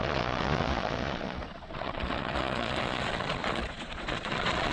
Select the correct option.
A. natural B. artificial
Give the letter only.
B